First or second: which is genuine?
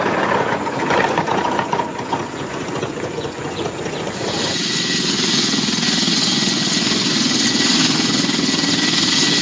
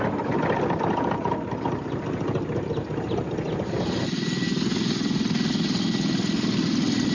second